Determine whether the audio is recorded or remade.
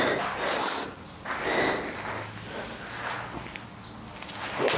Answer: recorded